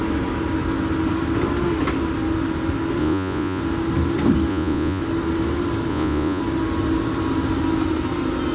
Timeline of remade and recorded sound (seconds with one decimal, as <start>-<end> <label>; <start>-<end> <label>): 0.0-3.0 recorded; 3.0-3.6 remade; 3.6-4.5 recorded; 4.5-5.0 remade; 5.0-5.9 recorded; 5.9-6.4 remade; 6.4-8.5 recorded